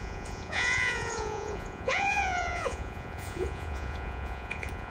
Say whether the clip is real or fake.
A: fake